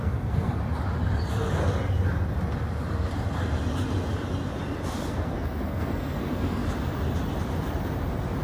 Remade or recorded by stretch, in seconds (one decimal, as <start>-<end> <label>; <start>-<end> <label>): 0.0-0.6 remade; 0.6-5.0 recorded; 5.0-6.6 remade; 6.6-8.4 recorded